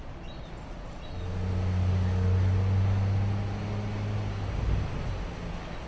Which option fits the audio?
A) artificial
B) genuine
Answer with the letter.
B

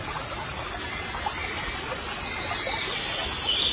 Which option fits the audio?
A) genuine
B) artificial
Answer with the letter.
A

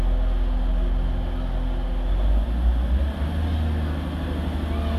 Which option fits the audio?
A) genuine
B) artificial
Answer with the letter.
A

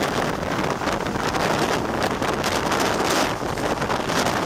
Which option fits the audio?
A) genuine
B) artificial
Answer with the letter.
A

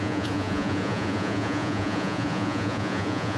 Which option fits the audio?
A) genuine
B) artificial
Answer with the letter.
B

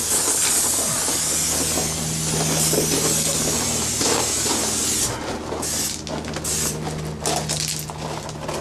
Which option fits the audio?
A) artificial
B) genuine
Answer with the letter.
B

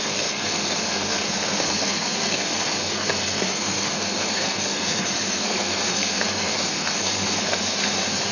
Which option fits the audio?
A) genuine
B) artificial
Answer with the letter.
B